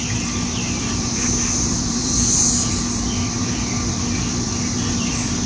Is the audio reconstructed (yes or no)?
yes